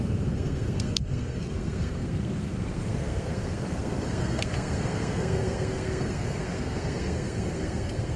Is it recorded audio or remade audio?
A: remade